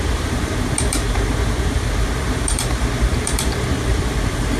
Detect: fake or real fake